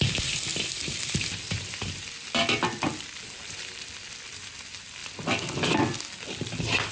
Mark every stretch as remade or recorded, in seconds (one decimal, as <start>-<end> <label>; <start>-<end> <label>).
0.0-0.5 recorded; 0.5-2.1 remade; 2.1-3.4 recorded; 3.4-4.4 remade; 4.4-5.0 recorded; 5.0-6.0 remade; 6.0-6.9 recorded